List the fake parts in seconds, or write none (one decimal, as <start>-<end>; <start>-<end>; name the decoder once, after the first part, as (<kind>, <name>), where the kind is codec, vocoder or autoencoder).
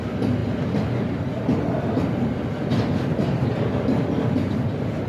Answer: none